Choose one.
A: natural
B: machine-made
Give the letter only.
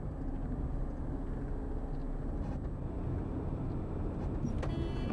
A